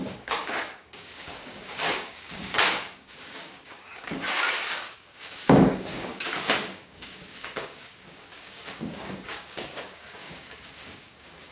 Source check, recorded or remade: remade